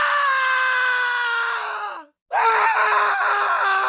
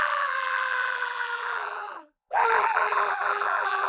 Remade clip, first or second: second